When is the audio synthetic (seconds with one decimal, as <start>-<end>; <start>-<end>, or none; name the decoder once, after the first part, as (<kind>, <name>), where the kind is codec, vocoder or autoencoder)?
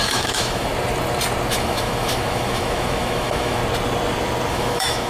0.0-0.7 (autoencoder, DAC-VAE); 1.5-3.6; 4.5-5.1